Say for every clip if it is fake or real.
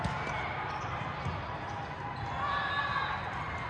real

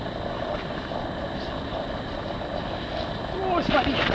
real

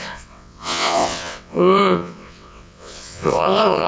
fake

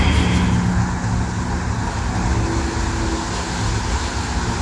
real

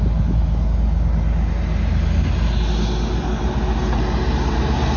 real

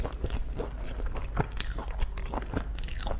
real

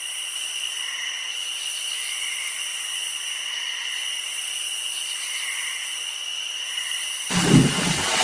real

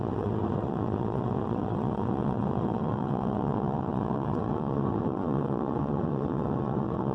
fake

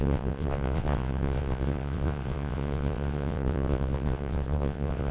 fake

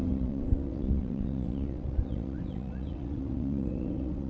fake